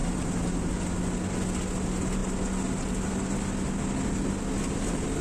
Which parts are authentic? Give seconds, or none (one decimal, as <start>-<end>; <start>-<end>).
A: 0.0-5.2